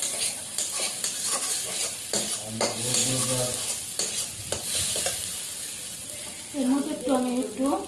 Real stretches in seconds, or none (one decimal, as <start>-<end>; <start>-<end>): 0.0-7.9